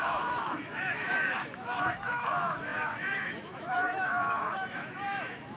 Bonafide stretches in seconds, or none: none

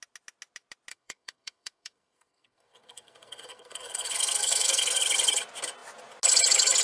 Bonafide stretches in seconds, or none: 0.0-0.9; 5.0-6.8

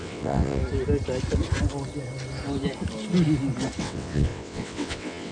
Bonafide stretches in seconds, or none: 0.6-3.8

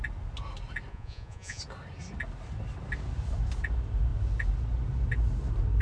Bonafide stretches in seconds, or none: 0.0-0.9; 1.6-5.8

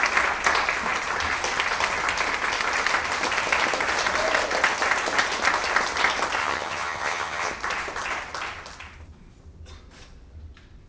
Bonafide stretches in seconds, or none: 0.0-6.4; 7.5-10.9

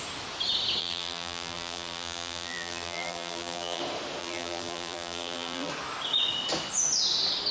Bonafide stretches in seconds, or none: 0.0-0.8; 3.8-4.2; 5.7-7.5